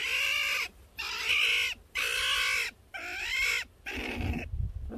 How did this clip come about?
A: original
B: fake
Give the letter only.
A